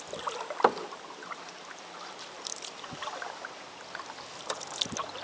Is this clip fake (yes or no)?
yes